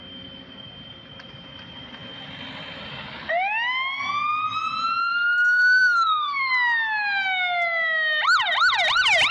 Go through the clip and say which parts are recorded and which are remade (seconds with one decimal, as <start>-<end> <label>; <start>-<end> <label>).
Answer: 0.0-5.1 recorded; 5.1-6.5 remade; 6.5-9.3 recorded